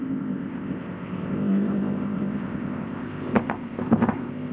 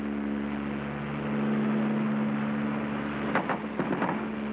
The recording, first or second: second